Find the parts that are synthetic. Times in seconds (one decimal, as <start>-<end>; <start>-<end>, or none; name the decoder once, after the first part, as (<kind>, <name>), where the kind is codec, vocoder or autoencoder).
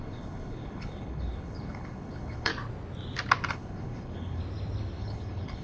0.0-2.5 (codec, HILCodec); 3.5-4.4; 5.0-5.6